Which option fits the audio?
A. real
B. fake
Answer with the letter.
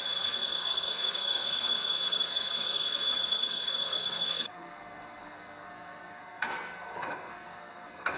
B